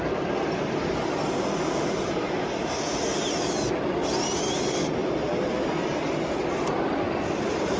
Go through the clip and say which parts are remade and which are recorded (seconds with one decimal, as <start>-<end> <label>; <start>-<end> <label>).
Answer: 0.0-7.8 recorded